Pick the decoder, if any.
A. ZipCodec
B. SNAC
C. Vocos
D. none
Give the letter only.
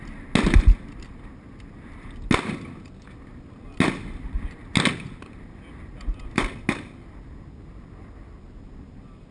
D